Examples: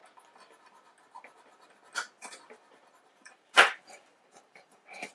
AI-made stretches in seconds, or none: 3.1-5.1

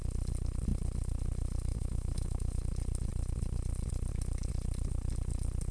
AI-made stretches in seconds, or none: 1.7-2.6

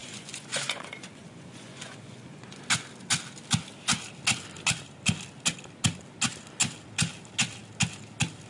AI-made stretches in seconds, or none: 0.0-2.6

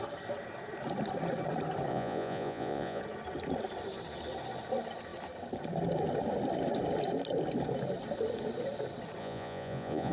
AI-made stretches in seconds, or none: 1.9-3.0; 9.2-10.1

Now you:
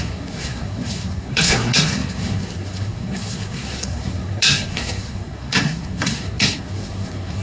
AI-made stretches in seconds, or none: 0.0-7.4

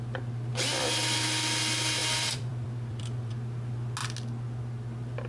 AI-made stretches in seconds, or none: 0.5-1.2; 2.0-3.3

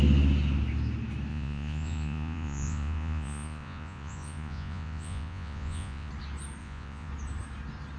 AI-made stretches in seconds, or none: 1.3-6.1; 6.6-7.1

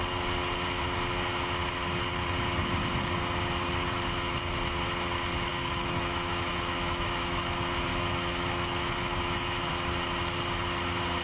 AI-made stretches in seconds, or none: 5.5-7.4; 7.9-9.7